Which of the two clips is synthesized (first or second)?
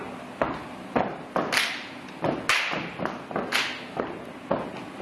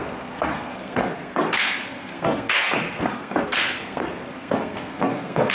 second